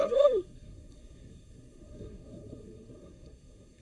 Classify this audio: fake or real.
fake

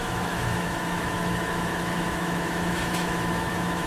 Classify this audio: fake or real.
fake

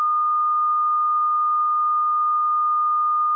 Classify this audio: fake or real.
real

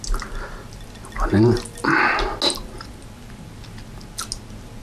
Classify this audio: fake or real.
real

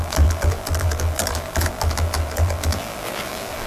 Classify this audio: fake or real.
fake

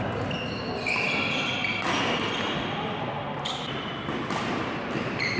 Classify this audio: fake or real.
real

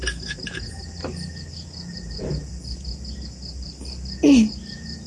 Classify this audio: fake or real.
real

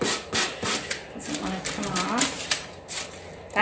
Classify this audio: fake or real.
real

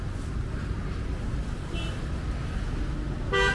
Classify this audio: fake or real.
real